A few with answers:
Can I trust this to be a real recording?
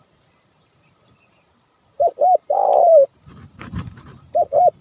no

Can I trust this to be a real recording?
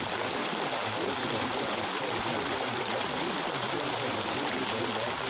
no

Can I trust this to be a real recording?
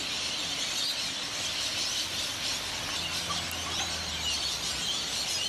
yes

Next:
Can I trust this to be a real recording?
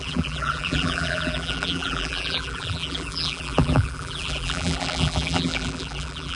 no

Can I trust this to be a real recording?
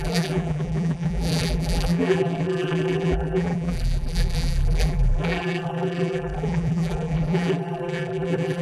no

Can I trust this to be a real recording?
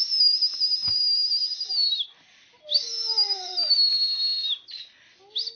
yes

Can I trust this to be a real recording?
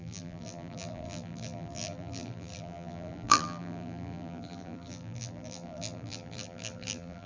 no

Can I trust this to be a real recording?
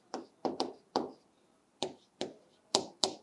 no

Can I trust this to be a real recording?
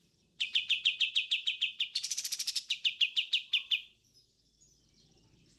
no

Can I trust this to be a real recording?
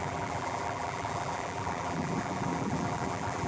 no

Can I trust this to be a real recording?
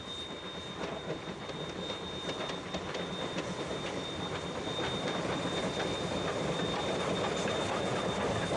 yes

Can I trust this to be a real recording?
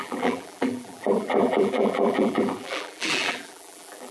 no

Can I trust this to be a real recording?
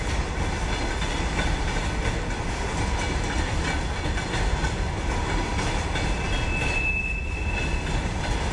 yes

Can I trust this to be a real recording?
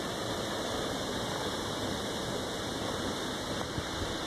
yes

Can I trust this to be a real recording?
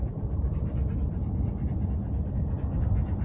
yes